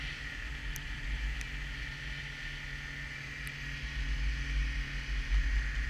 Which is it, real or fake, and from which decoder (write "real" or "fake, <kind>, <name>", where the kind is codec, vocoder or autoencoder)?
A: real